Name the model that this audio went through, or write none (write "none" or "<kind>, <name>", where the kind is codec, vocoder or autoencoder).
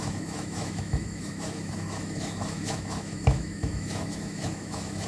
autoencoder, DAC-VAE